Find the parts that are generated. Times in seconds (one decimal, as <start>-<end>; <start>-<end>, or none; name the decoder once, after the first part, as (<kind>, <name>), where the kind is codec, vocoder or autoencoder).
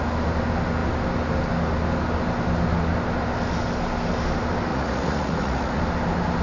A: 4.7-5.8 (vocoder, Vocos)